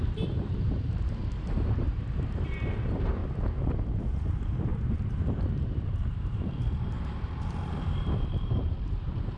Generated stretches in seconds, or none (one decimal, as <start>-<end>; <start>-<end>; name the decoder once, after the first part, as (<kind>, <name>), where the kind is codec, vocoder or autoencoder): 0.0-1.2 (vocoder, BigVGAN v2); 2.3-3.2; 4.0-9.4